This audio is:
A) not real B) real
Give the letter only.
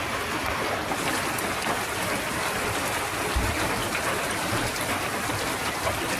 B